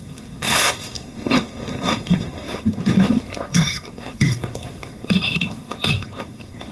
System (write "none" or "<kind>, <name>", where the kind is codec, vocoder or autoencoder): codec, SNAC